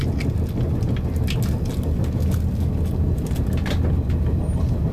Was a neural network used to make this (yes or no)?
no